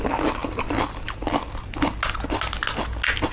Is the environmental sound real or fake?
real